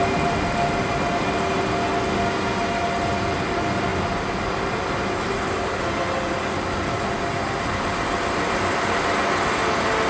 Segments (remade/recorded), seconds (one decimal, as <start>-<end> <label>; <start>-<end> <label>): 0.0-10.1 recorded